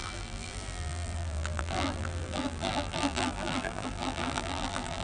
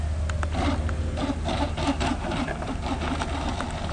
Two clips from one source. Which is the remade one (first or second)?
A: first